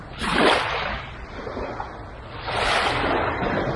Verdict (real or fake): real